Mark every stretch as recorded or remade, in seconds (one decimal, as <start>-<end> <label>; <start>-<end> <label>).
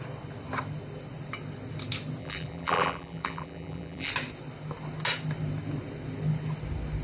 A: 0.0-2.2 recorded; 2.2-4.1 remade; 4.1-7.0 recorded